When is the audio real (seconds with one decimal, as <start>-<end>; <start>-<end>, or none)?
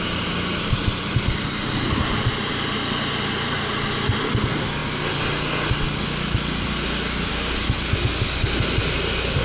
0.0-9.4